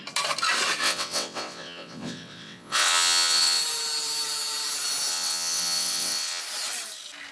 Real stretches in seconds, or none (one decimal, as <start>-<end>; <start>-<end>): 0.0-0.8; 3.6-5.1; 6.4-7.3